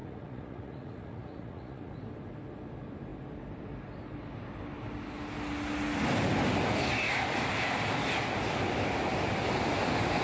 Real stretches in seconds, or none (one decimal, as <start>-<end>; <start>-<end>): 1.9-10.2